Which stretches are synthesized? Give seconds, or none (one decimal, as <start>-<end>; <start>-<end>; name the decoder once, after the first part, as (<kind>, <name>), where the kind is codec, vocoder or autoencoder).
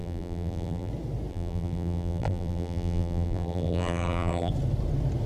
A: 0.0-0.9 (vocoder, BigVGAN v2); 1.3-4.5